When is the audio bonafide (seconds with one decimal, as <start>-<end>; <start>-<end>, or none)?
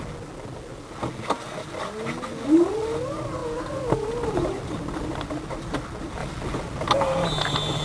0.0-6.2; 6.9-7.8